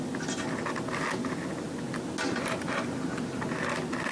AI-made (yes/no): no